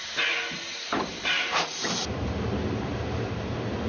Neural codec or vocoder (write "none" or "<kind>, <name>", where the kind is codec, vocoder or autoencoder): none